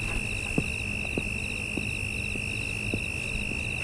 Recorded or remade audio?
recorded